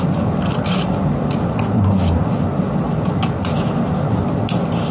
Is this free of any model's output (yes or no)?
yes